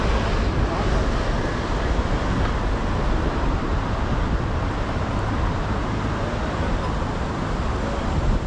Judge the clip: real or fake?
real